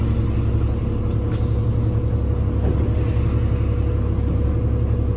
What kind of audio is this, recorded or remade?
recorded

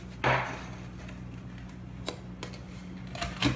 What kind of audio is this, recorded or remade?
recorded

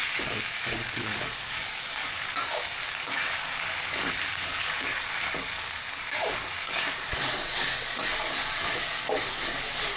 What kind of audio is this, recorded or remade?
remade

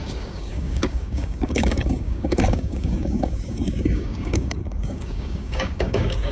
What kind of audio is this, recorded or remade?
remade